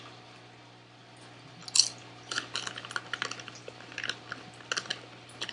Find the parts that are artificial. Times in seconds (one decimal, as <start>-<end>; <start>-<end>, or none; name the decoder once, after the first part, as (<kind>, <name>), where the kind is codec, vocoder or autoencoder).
none